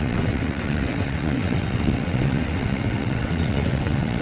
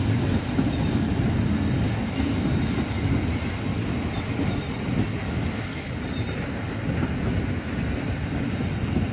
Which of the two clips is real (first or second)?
second